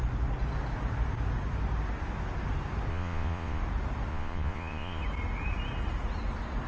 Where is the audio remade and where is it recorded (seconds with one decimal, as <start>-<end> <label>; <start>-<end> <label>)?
0.0-2.9 recorded; 2.9-3.6 remade; 3.6-4.1 recorded; 4.1-5.0 remade; 5.0-6.7 recorded